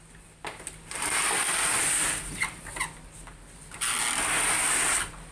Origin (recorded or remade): recorded